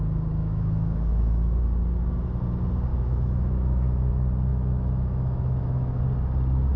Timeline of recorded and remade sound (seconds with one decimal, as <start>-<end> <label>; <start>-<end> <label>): 0.0-0.4 recorded; 0.4-1.6 remade; 1.6-2.9 recorded; 2.9-4.1 remade; 4.1-4.5 recorded; 4.5-6.0 remade; 6.0-6.8 recorded